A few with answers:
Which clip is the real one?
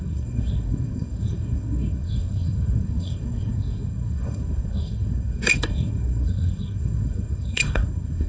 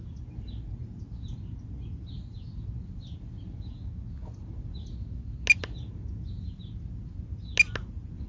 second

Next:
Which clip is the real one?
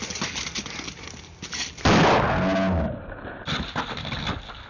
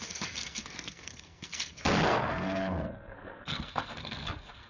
first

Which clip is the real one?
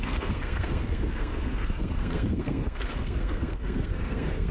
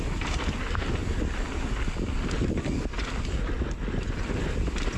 second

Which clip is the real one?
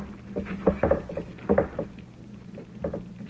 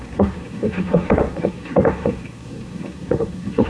first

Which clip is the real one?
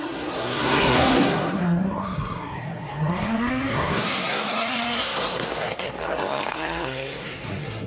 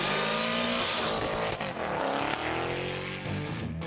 second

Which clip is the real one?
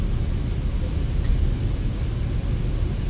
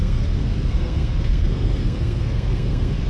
first